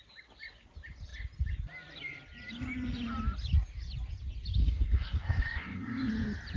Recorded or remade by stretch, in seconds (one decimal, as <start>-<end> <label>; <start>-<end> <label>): 0.0-4.6 recorded; 4.6-6.1 remade; 6.1-6.6 recorded